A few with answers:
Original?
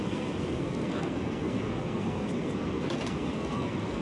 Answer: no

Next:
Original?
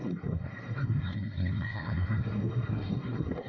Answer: no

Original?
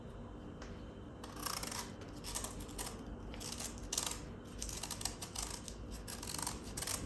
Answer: yes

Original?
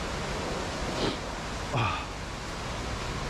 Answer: yes